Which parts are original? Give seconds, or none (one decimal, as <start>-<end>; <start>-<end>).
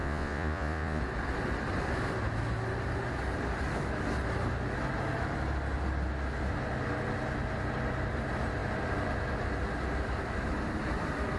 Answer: 1.0-11.4